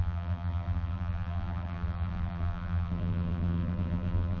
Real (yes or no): no